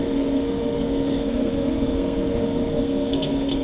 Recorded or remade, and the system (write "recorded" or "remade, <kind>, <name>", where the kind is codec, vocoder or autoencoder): remade, codec, SNAC